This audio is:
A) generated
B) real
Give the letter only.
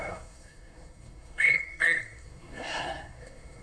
A